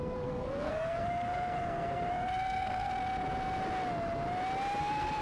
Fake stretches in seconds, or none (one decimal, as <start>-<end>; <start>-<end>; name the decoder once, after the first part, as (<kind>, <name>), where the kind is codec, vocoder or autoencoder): 0.0-2.9 (codec, SNAC); 4.8-5.2